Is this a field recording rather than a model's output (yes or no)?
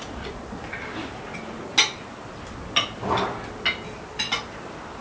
yes